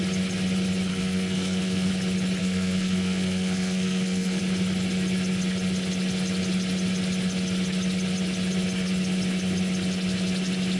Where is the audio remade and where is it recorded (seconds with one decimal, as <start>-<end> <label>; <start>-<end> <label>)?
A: 0.0-0.9 recorded; 0.9-1.9 remade; 1.9-2.4 recorded; 2.4-4.4 remade; 4.4-10.8 recorded